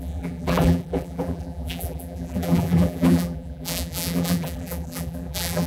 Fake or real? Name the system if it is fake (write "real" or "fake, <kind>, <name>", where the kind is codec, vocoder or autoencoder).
fake, vocoder, BigVGAN v2